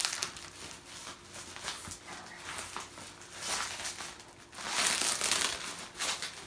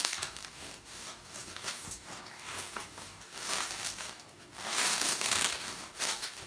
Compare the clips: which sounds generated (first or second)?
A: second